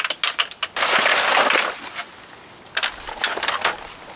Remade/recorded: recorded